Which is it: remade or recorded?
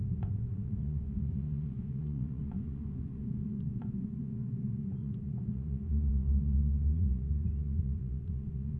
remade